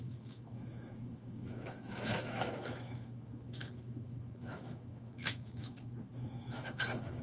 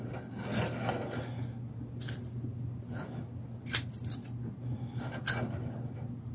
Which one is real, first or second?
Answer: second